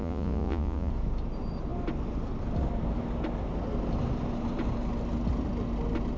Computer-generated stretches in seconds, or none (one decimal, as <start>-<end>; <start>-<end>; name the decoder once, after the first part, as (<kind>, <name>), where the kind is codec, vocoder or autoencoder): 0.0-0.9 (vocoder, Vocos)